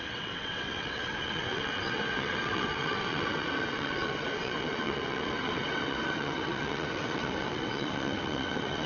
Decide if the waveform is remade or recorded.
remade